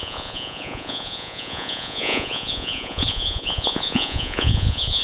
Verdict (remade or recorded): remade